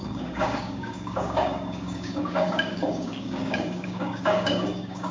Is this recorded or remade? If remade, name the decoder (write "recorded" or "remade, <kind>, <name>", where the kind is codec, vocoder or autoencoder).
remade, codec, DAC